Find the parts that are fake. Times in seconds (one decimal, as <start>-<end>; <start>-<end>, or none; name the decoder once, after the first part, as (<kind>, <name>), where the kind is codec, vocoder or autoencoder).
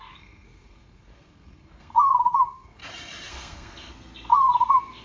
0.0-2.8 (codec, SNAC); 3.3-5.0